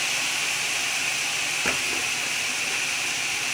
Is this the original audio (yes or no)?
yes